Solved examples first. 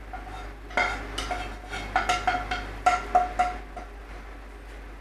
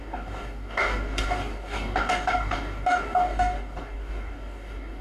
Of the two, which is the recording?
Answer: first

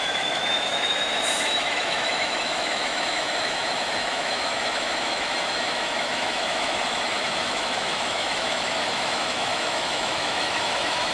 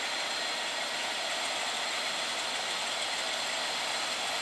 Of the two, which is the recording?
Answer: second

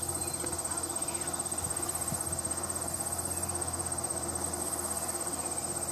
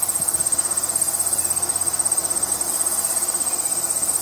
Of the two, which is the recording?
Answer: first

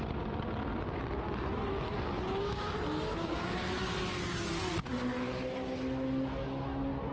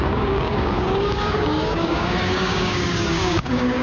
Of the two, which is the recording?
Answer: first